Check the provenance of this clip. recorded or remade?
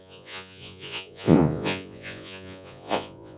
remade